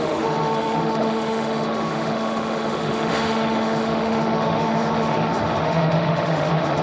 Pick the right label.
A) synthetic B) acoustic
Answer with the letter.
A